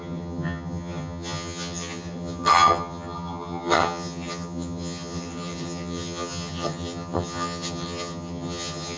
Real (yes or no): no